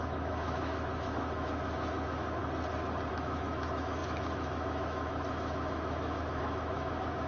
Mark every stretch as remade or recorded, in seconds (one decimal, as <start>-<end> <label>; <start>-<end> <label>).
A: 0.0-2.4 remade; 2.4-3.1 recorded; 3.1-7.3 remade